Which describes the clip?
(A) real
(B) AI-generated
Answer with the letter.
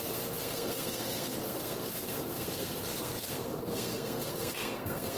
B